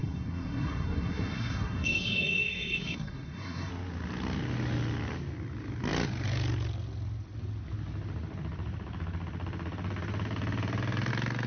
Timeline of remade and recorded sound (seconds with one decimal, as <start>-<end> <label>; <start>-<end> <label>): 0.0-3.7 remade; 3.7-11.5 recorded